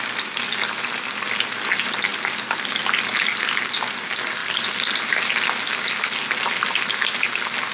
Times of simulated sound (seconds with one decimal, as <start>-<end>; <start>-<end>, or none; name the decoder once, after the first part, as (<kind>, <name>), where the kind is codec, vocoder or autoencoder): none